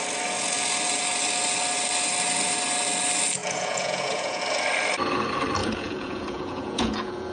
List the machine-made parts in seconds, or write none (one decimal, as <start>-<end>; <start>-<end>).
3.4-4.4; 5.6-7.3